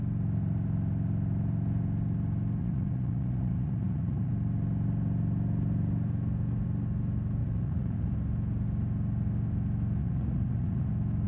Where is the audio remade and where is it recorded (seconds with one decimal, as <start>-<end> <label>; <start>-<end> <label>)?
0.0-2.6 recorded; 2.6-4.3 remade; 4.3-7.4 recorded; 7.4-8.1 remade; 8.1-10.0 recorded; 10.0-10.9 remade; 10.9-11.3 recorded